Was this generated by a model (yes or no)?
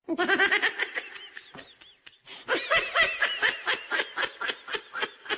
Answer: no